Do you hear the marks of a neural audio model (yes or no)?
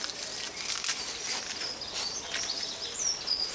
no